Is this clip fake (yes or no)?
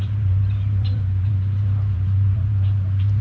yes